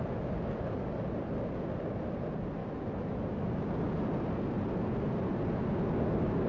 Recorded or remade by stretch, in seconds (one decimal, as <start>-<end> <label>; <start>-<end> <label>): 0.0-6.5 recorded